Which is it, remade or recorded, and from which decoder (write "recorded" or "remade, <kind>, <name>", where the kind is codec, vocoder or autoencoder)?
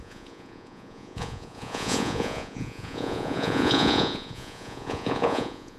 remade, vocoder, Vocos